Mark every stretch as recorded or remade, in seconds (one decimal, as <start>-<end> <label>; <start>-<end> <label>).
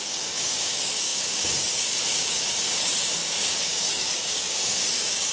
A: 0.0-5.3 remade